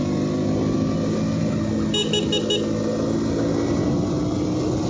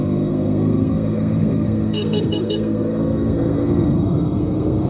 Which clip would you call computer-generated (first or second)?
second